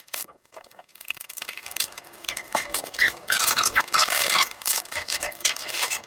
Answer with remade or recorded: remade